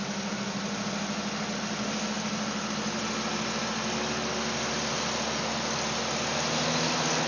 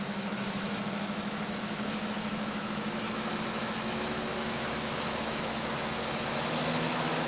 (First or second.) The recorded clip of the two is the first